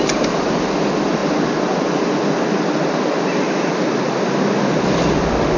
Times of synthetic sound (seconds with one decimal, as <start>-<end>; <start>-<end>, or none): none